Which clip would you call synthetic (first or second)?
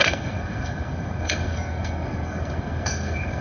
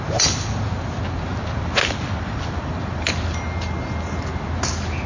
first